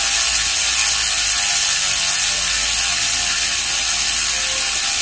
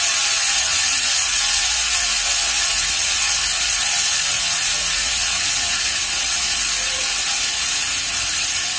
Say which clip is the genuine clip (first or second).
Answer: first